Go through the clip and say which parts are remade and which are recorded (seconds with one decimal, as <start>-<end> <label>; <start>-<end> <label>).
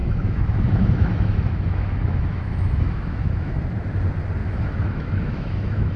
0.0-3.6 remade; 3.6-4.4 recorded; 4.4-6.0 remade